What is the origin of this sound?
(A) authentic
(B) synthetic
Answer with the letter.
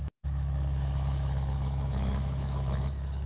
B